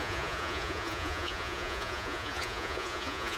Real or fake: fake